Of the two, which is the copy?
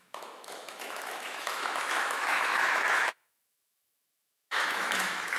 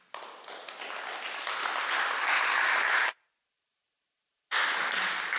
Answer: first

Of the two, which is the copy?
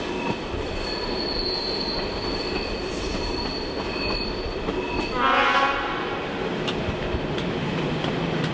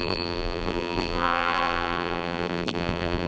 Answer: second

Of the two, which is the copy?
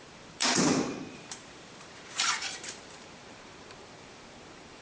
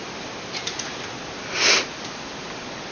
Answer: first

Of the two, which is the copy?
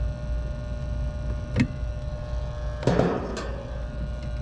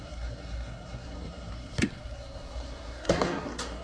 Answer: second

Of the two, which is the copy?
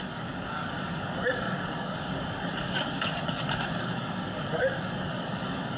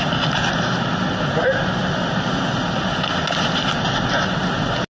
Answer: first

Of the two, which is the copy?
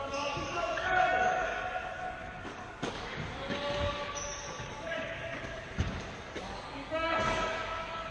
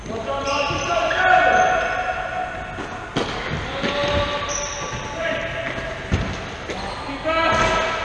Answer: first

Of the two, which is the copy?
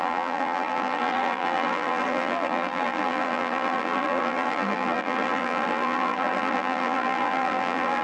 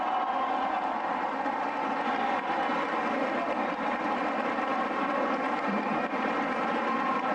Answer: first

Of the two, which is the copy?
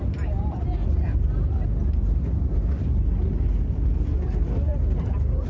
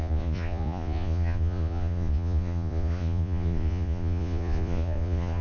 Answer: second